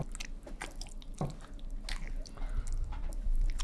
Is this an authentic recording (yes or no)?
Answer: yes